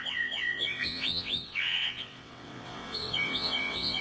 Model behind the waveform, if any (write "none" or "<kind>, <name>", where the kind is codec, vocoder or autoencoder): vocoder, WaveNeXt